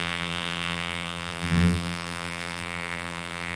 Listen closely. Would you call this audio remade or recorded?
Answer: remade